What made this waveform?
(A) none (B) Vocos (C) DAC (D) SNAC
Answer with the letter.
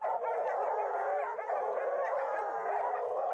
A